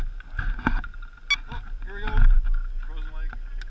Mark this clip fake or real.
real